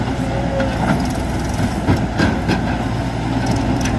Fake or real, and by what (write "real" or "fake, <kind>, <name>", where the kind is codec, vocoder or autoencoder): real